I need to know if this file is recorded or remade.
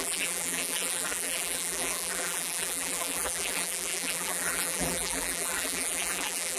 remade